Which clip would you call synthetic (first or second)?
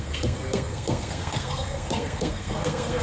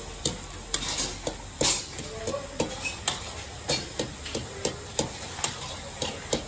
first